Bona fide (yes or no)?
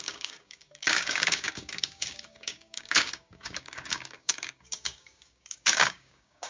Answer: no